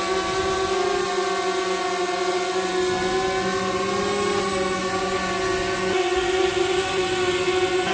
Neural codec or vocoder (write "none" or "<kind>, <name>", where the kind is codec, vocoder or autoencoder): none